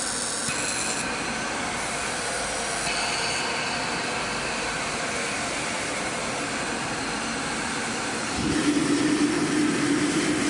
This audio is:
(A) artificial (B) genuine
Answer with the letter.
B